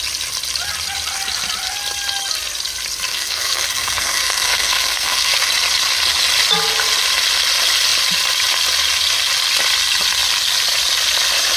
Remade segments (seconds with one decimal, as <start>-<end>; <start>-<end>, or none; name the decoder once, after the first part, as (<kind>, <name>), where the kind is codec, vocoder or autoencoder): 3.1-5.5 (codec, SNAC)